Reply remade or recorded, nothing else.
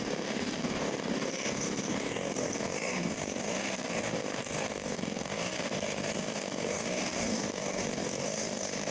remade